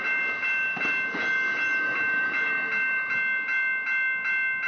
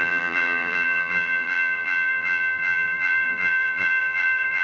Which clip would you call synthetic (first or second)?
second